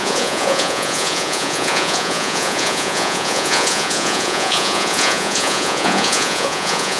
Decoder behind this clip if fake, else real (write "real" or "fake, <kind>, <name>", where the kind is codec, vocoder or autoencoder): fake, vocoder, Vocos